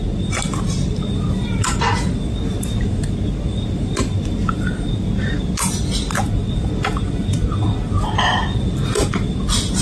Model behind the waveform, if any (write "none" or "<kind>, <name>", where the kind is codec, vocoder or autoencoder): none